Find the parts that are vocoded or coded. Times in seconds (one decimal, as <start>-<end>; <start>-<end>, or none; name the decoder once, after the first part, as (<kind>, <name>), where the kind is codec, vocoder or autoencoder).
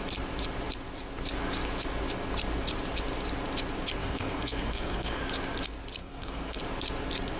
4.0-5.2 (codec, SNAC); 6.0-6.6